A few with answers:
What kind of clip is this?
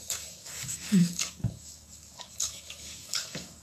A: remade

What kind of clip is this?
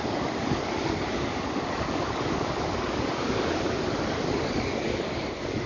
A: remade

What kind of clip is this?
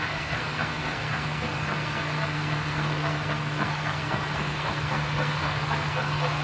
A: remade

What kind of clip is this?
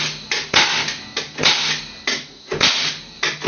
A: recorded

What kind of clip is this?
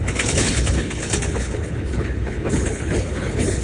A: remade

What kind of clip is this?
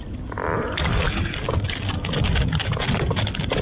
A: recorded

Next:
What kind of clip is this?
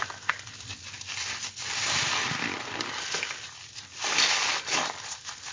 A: remade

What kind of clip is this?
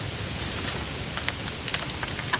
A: recorded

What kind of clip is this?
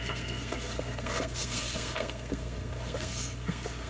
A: remade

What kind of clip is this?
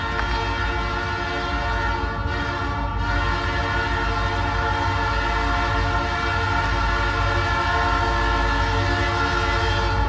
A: recorded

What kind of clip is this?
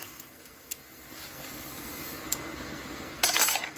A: remade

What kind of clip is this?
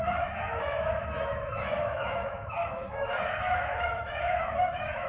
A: remade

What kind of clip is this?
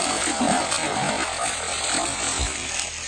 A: recorded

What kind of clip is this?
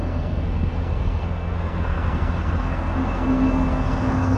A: remade